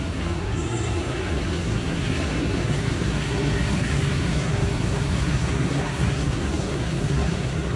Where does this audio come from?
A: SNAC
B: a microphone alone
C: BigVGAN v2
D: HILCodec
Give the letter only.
A